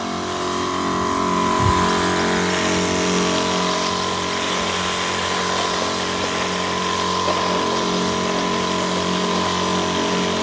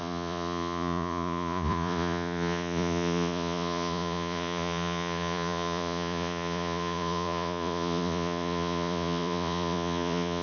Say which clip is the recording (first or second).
first